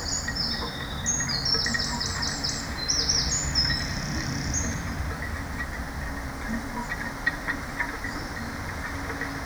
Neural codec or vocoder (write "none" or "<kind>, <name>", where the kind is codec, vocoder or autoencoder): none